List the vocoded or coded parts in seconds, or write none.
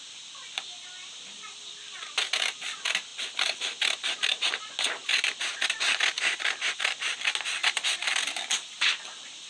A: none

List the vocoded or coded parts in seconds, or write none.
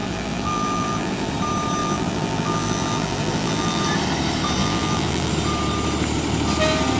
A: 0.0-1.3 (vocoder, BigVGAN v2); 1.8-3.8; 4.6-5.3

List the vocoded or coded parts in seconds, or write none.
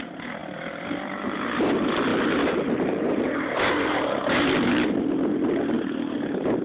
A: 2.1-5.1 (vocoder, BigVGAN v2)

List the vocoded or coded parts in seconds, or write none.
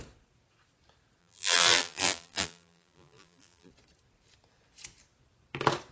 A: 1.2-3.7 (vocoder, BigVGAN v2)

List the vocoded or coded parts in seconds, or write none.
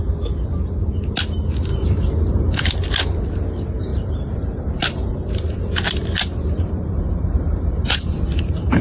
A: 1.7-2.7 (vocoder, BigVGAN v2); 3.9-5.6; 6.0-8.8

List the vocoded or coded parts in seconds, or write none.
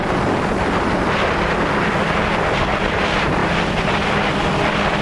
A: 2.1-5.0 (vocoder, BigVGAN v2)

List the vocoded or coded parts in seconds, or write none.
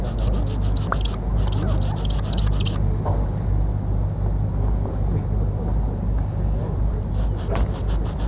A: 6.6-7.1 (vocoder, BigVGAN v2)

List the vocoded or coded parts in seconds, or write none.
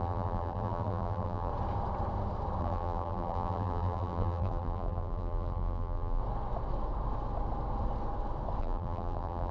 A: 0.0-1.5 (vocoder, BigVGAN v2); 2.6-6.2; 8.6-9.5